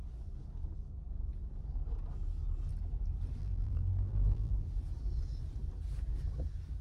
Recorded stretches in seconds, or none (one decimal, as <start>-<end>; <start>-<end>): 0.0-3.4; 4.5-6.8